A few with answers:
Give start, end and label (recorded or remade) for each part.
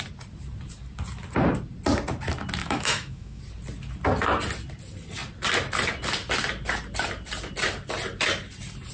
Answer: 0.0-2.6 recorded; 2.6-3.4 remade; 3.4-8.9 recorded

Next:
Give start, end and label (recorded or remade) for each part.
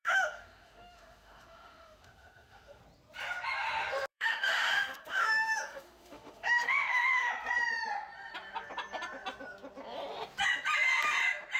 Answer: 0.0-2.8 remade; 2.8-4.1 recorded; 4.1-7.3 remade; 7.3-11.6 recorded